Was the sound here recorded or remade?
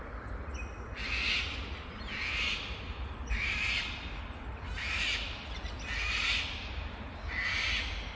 recorded